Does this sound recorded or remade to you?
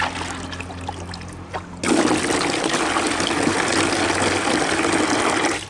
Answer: recorded